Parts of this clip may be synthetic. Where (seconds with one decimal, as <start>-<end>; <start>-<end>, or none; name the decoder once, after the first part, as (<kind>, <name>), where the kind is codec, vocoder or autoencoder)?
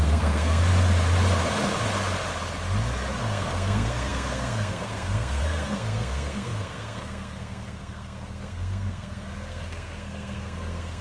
0.0-0.6 (codec, SNAC); 3.2-11.0